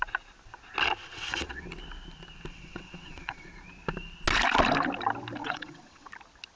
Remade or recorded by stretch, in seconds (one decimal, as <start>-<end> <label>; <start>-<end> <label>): 0.0-1.0 recorded; 1.0-1.6 remade; 1.6-2.5 recorded; 2.5-3.5 remade; 3.5-5.4 recorded; 5.4-6.1 remade; 6.1-6.6 recorded